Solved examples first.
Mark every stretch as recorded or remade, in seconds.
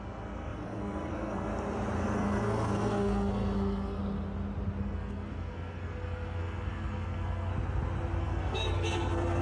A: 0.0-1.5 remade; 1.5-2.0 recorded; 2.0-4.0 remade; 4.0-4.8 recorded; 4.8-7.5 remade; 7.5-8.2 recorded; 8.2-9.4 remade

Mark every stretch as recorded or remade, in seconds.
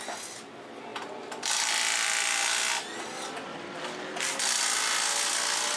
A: 0.0-5.8 recorded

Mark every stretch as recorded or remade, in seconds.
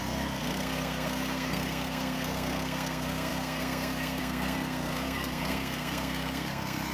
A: 0.0-6.9 remade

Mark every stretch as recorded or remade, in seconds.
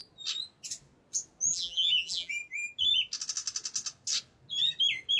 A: 0.0-1.5 recorded; 1.5-2.3 remade; 2.3-5.2 recorded